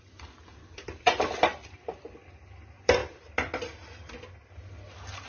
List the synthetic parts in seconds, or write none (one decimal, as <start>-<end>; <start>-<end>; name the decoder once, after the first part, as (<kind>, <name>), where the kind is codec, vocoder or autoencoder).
0.0-3.0 (vocoder, BigVGAN v2)

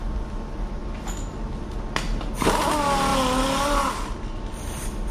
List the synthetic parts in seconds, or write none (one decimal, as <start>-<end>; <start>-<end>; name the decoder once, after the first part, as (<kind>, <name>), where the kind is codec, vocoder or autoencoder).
none

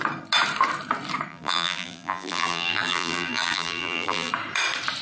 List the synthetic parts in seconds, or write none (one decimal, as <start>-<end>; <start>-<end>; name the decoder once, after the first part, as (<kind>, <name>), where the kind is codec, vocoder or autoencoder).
1.3-4.3 (vocoder, BigVGAN v2)

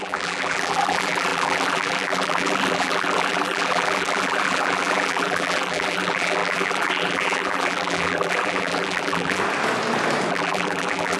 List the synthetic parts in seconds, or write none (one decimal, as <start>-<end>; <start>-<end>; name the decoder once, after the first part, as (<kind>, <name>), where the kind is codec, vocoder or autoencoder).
0.0-9.4 (vocoder, BigVGAN v2); 10.3-11.2

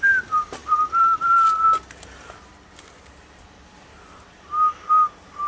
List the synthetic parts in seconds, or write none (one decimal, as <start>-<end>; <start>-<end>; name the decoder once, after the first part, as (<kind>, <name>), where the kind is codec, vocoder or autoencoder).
none

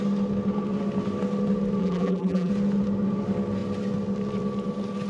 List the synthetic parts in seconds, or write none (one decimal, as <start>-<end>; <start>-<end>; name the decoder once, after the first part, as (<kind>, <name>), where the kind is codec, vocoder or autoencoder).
1.8-2.5 (vocoder, BigVGAN v2)

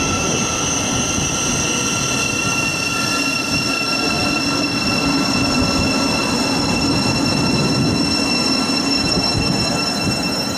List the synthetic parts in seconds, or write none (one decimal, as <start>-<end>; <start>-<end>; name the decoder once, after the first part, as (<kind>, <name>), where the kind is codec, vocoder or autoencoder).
none

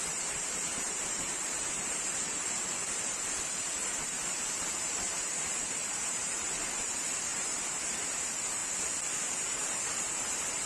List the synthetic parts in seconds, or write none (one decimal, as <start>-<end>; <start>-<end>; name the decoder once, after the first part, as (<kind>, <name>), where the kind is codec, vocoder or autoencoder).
0.0-8.6 (vocoder, BigVGAN v2); 9.3-10.7